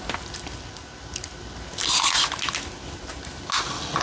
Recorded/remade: recorded